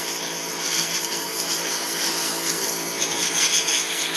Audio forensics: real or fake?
fake